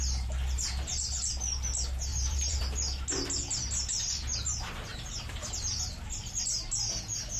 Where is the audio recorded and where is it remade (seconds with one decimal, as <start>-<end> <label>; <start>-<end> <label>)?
0.0-2.1 recorded; 2.1-2.6 remade; 2.6-4.9 recorded; 4.9-6.1 remade; 6.1-7.4 recorded